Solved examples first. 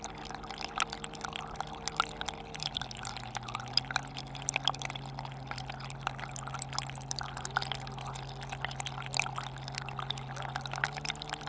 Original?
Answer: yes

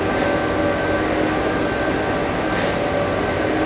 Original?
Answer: yes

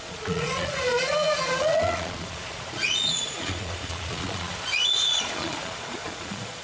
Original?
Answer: no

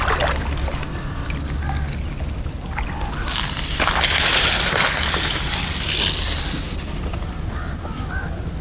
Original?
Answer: yes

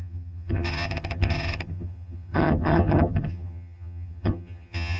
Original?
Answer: no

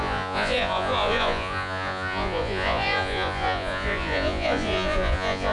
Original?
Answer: no